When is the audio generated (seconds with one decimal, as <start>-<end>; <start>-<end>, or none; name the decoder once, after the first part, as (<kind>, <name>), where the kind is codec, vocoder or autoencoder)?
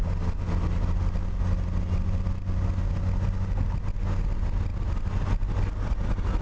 none